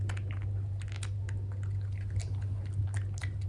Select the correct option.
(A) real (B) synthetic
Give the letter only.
A